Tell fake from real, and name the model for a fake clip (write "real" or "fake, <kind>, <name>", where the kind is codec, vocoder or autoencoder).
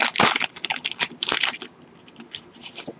fake, vocoder, BigVGAN v2